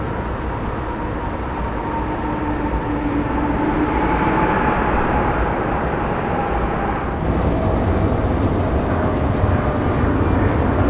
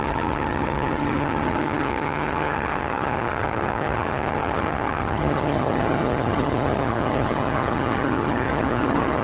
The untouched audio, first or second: first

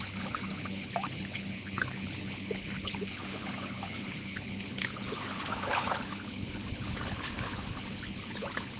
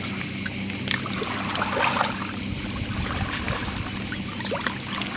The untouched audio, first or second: second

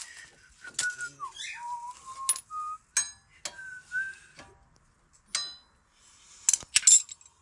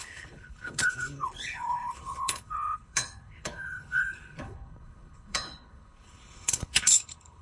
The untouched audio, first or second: first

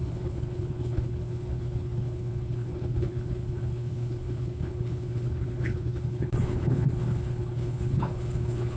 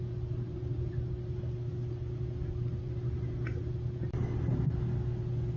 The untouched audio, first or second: second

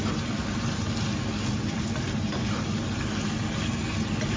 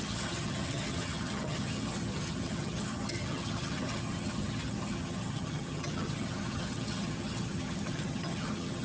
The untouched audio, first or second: first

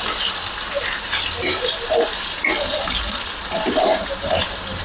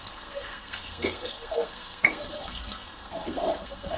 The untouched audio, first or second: first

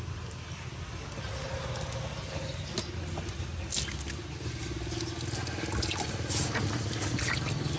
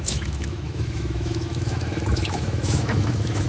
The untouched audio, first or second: first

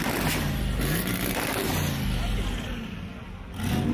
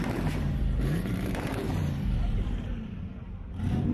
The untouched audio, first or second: first